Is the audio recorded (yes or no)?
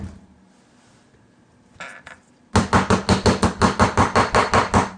yes